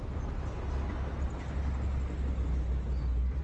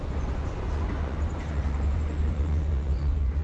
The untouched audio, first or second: first